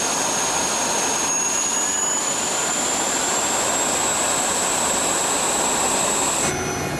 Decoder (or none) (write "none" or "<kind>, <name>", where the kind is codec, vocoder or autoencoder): none